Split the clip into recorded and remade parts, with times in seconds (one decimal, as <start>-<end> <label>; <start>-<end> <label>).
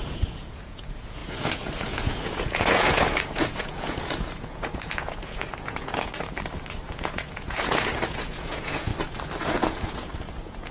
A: 0.0-6.1 remade; 6.1-6.9 recorded; 6.9-8.9 remade; 8.9-9.4 recorded; 9.4-10.7 remade